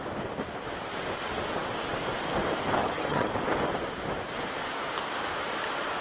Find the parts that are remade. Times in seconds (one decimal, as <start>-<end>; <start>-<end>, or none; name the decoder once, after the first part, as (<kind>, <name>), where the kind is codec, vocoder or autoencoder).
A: 2.8-3.3 (vocoder, HiFi-GAN)